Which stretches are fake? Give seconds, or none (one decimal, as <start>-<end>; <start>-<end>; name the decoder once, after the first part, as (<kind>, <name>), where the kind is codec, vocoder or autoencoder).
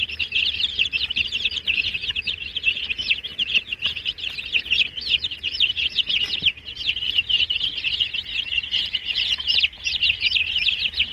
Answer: 0.0-7.7 (vocoder, BigVGAN v2); 8.8-11.1